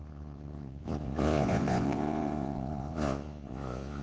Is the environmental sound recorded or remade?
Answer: remade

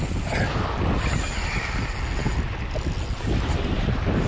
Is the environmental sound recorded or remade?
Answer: recorded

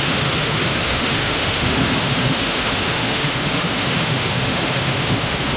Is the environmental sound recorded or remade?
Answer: remade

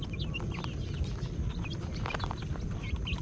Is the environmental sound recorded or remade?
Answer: recorded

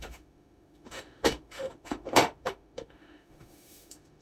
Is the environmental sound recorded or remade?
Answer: remade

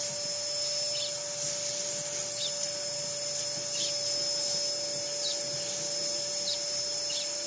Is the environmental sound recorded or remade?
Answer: recorded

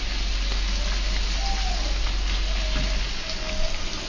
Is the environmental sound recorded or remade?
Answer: recorded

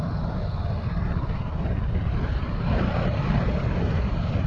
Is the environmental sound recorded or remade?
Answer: recorded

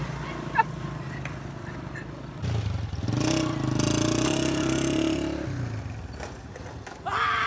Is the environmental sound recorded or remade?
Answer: recorded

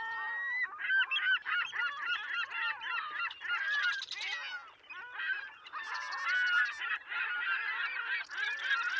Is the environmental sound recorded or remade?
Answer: recorded